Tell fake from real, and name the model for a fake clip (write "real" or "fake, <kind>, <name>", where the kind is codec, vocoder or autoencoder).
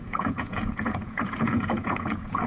fake, vocoder, Vocos